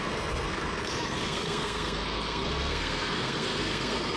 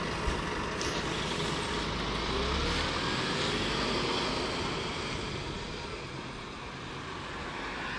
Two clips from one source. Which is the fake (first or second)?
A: first